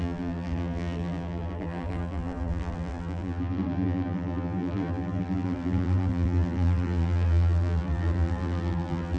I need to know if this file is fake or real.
fake